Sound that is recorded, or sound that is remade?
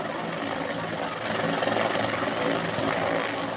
recorded